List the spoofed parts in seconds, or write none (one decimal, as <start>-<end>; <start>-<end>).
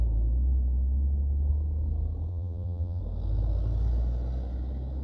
2.3-3.0